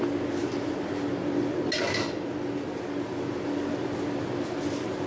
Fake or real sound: real